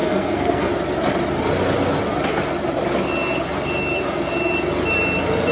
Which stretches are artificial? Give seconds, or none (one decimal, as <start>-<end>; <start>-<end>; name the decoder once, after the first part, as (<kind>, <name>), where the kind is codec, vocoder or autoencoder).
0.0-0.7 (codec, SNAC)